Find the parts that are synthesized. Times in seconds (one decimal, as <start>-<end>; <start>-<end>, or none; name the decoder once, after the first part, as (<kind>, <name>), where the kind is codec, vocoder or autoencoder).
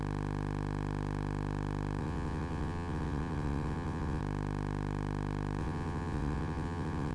2.0-4.2 (vocoder, WaveNeXt); 5.6-7.1